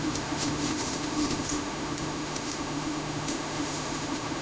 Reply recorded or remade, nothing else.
remade